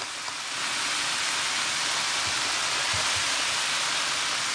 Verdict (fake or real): real